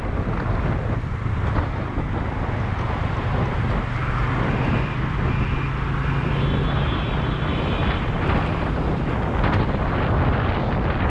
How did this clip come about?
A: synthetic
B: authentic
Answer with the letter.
B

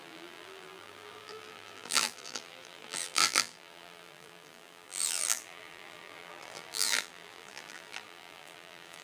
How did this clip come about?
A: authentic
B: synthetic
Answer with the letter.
B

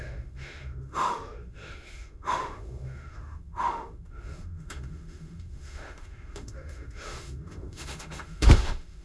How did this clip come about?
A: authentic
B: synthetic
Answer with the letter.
B